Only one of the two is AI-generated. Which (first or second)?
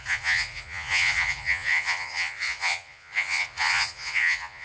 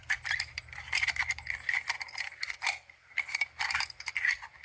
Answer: first